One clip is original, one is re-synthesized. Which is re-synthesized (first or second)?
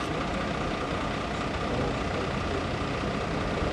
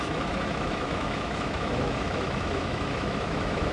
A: second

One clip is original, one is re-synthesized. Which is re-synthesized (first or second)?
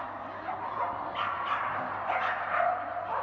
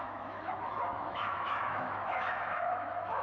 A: second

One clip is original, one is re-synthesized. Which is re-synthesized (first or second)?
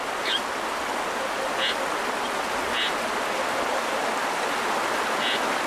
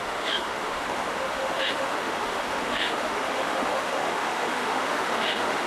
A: second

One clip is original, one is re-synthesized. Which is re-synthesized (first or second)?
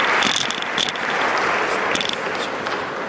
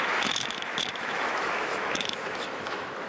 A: second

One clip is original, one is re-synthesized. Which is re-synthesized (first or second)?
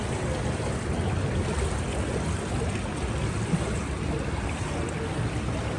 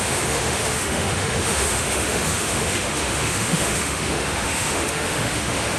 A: second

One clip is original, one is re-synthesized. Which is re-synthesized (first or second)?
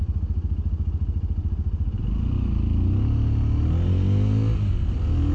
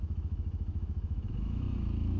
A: second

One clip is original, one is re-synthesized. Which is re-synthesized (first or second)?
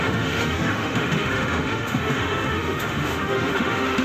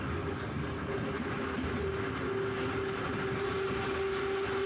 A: first